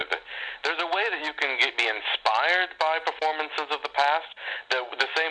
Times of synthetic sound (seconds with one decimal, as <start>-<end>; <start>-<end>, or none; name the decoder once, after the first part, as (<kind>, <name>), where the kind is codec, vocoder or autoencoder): none